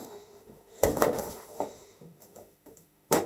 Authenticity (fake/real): fake